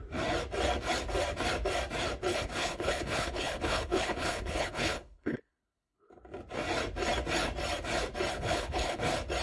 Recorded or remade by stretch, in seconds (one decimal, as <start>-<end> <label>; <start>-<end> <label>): 0.0-2.3 recorded; 2.3-6.1 remade; 6.1-8.3 recorded; 8.3-9.0 remade; 9.0-9.4 recorded